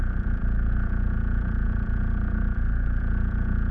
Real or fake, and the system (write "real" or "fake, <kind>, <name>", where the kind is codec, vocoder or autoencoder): fake, vocoder, Vocos